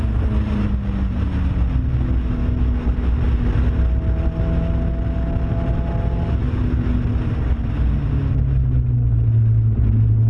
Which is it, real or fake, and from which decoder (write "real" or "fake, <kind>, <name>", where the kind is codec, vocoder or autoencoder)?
real